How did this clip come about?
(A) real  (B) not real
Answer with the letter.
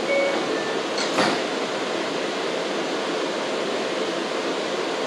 A